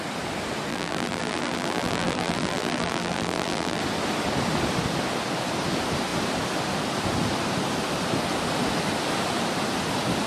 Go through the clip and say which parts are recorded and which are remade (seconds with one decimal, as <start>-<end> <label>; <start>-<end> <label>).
0.0-0.7 recorded; 0.7-3.8 remade; 3.8-10.3 recorded